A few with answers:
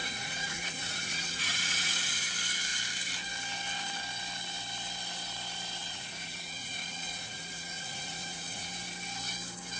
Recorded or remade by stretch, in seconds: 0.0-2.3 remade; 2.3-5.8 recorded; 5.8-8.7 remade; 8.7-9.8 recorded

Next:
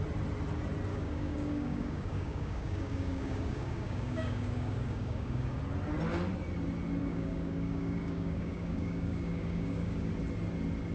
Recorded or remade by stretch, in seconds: 0.0-0.9 recorded; 0.9-5.6 remade; 5.6-7.0 recorded; 7.0-10.1 remade; 10.1-10.9 recorded